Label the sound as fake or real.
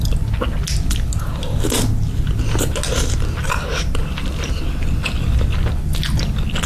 real